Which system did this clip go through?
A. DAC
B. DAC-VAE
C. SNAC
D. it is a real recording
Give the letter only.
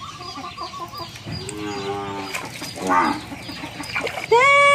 D